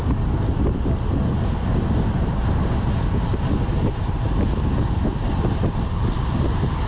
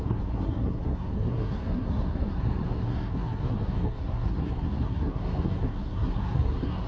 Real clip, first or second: first